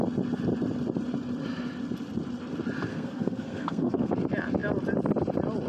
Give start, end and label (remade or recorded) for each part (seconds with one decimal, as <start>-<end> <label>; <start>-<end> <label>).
0.0-2.9 recorded; 2.9-4.1 remade; 4.1-5.7 recorded